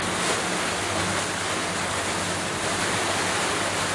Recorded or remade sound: recorded